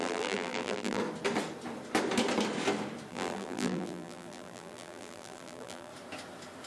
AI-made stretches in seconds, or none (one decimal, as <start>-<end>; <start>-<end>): 0.0-1.0; 3.1-5.9